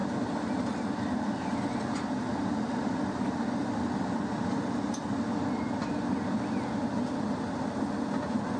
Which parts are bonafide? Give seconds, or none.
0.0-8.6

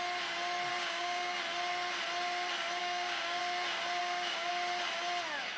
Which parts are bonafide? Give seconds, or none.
0.0-0.7; 1.4-2.8; 3.4-4.0; 4.5-5.6

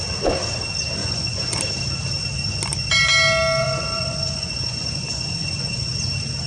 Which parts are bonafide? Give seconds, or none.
0.0-1.0; 1.6-3.6; 5.9-6.5

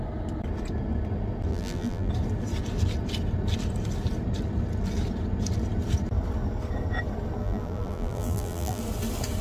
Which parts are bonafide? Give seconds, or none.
0.0-1.5; 2.1-7.4; 8.8-9.4

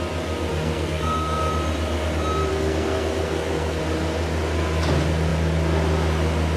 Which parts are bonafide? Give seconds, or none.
0.0-0.5; 1.5-2.5; 3.8-6.6

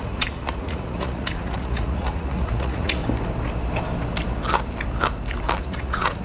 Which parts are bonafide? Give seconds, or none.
3.0-5.6

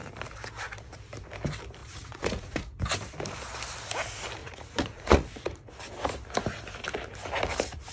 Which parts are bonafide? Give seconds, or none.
0.0-1.8; 2.8-4.4; 5.7-7.9